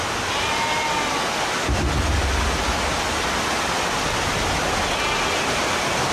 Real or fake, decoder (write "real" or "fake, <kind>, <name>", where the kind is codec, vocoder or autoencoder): real